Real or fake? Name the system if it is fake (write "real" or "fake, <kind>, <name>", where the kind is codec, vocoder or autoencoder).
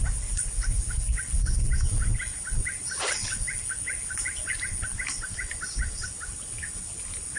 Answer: real